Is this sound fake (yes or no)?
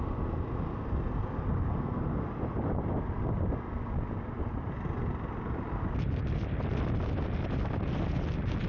no